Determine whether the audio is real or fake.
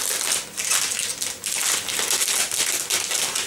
real